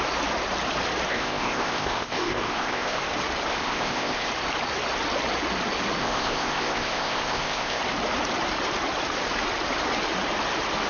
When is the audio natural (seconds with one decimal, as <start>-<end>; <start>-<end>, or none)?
0.0-1.1; 3.0-3.5; 4.3-6.0; 7.8-10.9